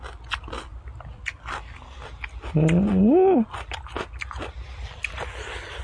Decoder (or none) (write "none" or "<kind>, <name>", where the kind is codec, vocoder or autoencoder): none